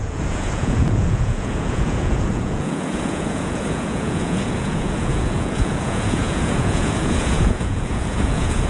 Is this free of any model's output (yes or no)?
no